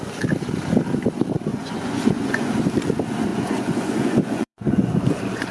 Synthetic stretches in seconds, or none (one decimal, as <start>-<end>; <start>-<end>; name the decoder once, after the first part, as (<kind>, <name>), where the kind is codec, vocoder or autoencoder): 1.5-2.5 (vocoder, Vocos); 3.3-5.5